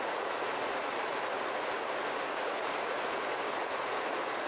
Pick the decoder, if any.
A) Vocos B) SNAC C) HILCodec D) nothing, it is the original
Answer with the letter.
A